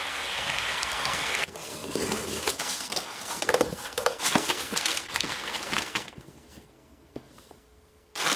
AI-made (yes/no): yes